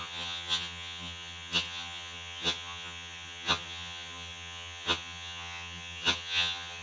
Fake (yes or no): yes